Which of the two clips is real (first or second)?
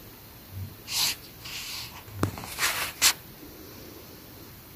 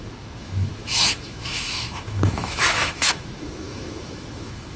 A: first